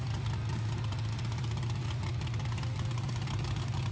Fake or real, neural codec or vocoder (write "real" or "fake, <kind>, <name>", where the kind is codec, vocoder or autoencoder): real